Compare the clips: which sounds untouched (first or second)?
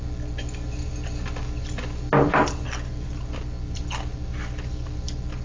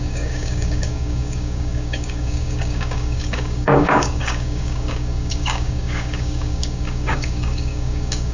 first